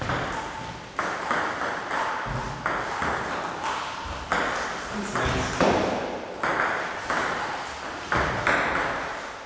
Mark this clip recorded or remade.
recorded